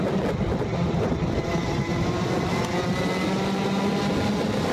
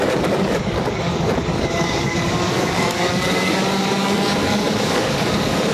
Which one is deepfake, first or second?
second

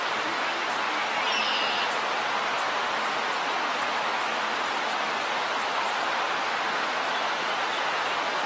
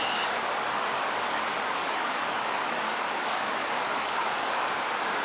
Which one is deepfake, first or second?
second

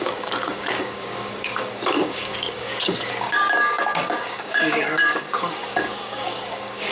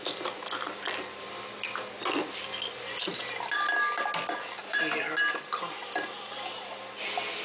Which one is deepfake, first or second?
first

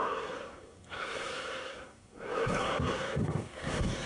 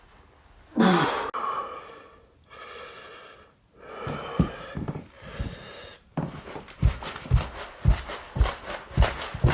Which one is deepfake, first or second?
first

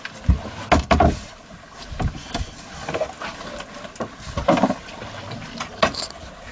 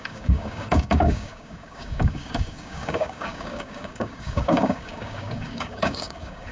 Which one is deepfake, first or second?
second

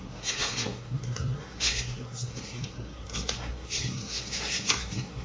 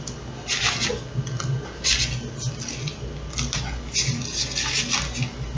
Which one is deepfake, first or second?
first